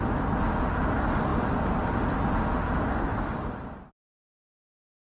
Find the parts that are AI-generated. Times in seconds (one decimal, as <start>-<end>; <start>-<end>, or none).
1.3-1.8; 3.1-3.9

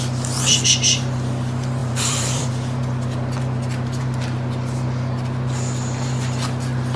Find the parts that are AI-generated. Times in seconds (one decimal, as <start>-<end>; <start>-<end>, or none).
1.8-2.5

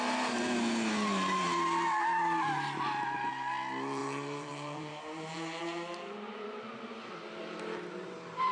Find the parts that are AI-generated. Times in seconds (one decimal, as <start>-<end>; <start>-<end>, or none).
4.0-6.6

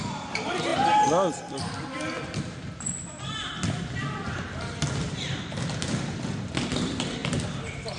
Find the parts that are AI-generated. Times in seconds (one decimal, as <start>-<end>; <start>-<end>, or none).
none

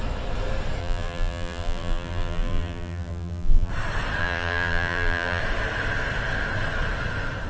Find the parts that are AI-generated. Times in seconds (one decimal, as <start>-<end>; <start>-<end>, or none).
0.8-3.7; 4.2-5.4

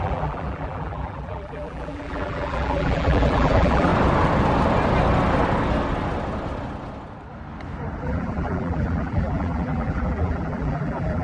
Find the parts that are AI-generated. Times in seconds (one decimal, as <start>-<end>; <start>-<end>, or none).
0.0-3.9; 8.0-11.2

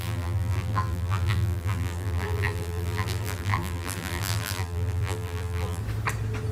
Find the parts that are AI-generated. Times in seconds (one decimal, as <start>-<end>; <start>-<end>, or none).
0.0-5.8